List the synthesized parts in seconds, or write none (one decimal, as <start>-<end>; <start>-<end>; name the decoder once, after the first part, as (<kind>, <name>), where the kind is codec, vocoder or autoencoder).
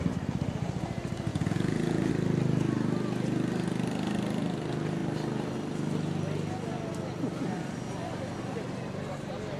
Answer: 1.3-2.1 (vocoder, Vocos)